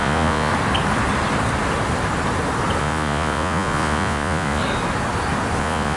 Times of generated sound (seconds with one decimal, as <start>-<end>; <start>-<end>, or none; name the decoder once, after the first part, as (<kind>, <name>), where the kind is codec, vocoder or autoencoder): 0.0-0.5 (vocoder, Vocos); 2.8-4.6; 5.6-6.0